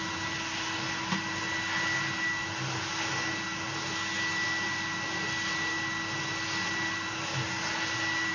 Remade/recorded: recorded